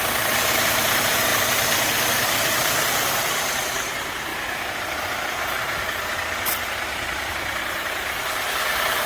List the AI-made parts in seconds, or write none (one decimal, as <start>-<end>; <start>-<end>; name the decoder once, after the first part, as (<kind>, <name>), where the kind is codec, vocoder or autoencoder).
0.0-4.3 (vocoder, BigVGAN v2); 7.3-9.1